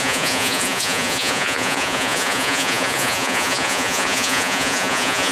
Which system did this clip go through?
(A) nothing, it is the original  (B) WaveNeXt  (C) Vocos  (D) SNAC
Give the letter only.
C